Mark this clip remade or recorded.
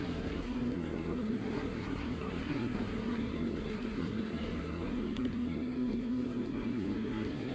remade